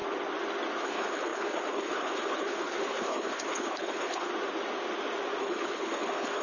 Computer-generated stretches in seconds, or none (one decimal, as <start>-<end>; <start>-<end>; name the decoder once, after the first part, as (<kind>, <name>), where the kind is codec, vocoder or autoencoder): 0.8-4.3 (codec, HILCodec); 5.4-6.4